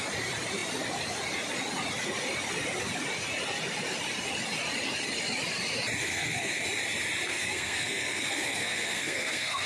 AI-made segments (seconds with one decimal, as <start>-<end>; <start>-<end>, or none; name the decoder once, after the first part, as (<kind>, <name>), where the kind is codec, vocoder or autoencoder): 6.0-6.6 (codec, SNAC); 7.3-9.7